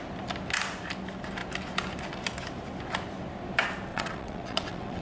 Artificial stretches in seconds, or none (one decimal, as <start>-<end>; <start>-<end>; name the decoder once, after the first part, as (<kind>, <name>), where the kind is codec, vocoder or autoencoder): 3.9-5.0 (vocoder, WaveNeXt)